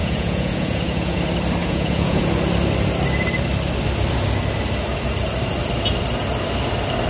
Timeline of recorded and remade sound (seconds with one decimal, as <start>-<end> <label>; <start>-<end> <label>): 0.0-1.2 remade; 1.2-1.6 recorded; 1.6-2.3 remade; 2.3-7.1 recorded